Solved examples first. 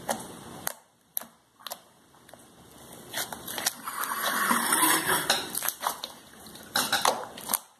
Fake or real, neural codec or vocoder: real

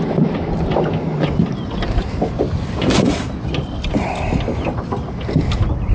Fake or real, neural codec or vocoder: real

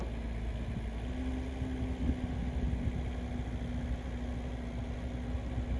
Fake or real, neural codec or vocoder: real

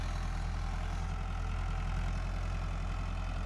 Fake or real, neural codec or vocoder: real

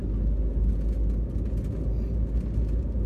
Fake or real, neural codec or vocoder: real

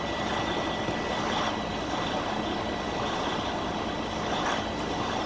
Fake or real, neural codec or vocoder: real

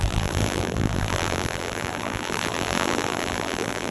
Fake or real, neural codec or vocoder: fake, vocoder, BigVGAN v2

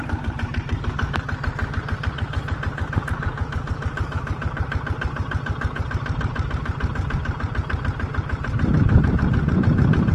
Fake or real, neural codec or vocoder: fake, vocoder, BigVGAN v2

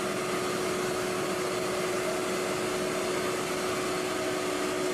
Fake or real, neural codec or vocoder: real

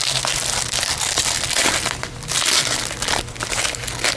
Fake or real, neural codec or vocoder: real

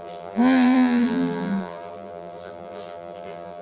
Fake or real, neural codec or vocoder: fake, vocoder, BigVGAN v2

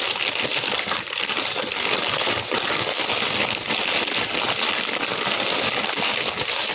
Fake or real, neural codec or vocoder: real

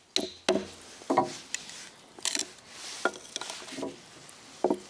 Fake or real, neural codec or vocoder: real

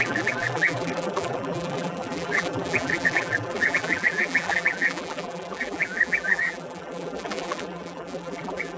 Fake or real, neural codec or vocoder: fake, vocoder, BigVGAN v2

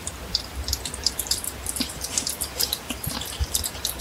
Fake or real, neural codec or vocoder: fake, vocoder, BigVGAN v2